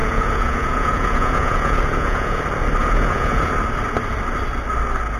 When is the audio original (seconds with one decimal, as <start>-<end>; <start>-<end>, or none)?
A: 2.4-2.8; 3.5-5.2